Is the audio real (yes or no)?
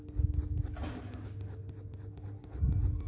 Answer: yes